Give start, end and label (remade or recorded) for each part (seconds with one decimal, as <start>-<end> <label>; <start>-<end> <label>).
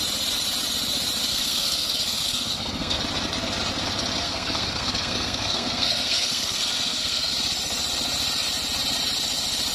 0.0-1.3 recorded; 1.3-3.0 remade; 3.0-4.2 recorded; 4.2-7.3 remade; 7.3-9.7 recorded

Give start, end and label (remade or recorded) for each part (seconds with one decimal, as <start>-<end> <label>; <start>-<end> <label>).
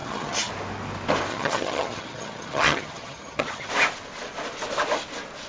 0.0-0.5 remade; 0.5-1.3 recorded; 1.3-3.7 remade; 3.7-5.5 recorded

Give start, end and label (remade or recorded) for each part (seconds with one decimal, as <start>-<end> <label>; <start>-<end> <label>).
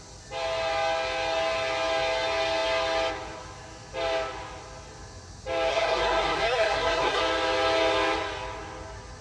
0.0-5.7 recorded; 5.7-7.2 remade; 7.2-9.2 recorded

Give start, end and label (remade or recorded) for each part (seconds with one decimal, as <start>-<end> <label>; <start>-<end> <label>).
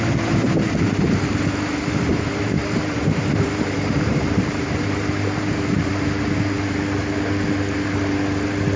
0.0-2.1 recorded; 2.1-5.9 remade; 5.9-8.8 recorded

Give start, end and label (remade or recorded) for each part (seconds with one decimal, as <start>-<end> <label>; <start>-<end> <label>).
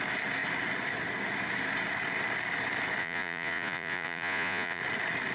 0.0-3.0 recorded; 3.0-4.8 remade; 4.8-5.3 recorded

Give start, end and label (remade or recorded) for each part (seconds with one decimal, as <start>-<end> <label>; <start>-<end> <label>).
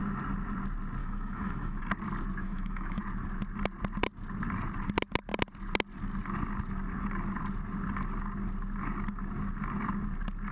0.0-1.0 recorded; 1.0-1.8 remade; 1.8-2.4 recorded; 2.4-3.0 remade; 3.0-10.5 recorded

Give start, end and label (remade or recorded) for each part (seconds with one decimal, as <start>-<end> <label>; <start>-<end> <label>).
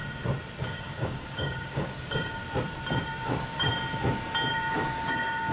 0.0-0.6 recorded; 0.6-2.4 remade; 2.4-3.0 recorded; 3.0-3.7 remade; 3.7-4.5 recorded; 4.5-5.5 remade